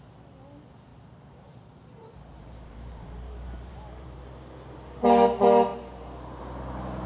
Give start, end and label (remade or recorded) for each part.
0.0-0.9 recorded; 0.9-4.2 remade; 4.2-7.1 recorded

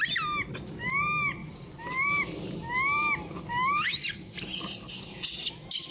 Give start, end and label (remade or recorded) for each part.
0.0-1.4 recorded; 1.4-4.9 remade; 4.9-5.9 recorded

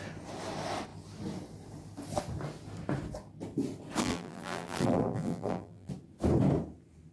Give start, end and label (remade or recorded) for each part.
0.0-4.0 recorded; 4.0-5.9 remade; 5.9-7.1 recorded

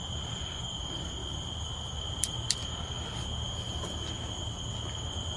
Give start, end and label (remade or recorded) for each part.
0.0-5.4 recorded

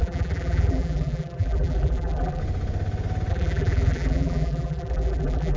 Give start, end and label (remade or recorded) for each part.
0.0-2.4 remade; 2.4-3.3 recorded; 3.3-5.6 remade

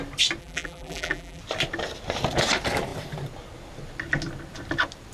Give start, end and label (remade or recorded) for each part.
0.0-0.4 recorded; 0.4-1.4 remade; 1.4-5.1 recorded

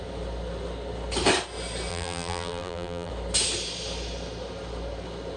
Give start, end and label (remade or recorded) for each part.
0.0-1.9 recorded; 1.9-3.1 remade; 3.1-5.4 recorded